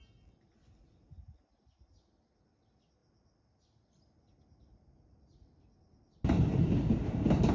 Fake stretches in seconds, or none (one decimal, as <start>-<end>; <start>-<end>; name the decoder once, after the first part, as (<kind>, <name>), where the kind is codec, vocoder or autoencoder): none

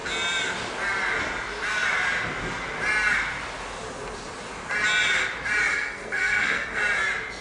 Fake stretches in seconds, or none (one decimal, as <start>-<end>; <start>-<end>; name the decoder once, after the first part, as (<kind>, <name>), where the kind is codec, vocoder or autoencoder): 5.7-6.8 (codec, SNAC)

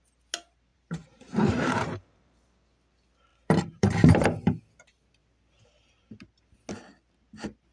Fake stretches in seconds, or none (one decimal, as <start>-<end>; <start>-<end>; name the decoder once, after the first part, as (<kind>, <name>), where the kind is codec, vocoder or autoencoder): 0.7-2.5 (vocoder, BigVGAN v2); 3.3-4.6

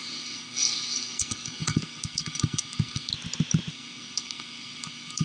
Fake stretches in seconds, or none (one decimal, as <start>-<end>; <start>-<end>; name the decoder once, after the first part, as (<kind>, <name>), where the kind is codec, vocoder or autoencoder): 0.0-3.1 (codec, SNAC); 3.7-5.2

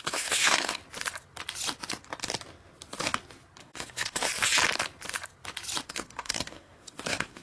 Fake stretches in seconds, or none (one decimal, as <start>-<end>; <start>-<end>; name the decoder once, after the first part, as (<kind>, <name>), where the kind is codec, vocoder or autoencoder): 0.0-0.8 (codec, SNAC); 3.6-4.3; 5.9-7.4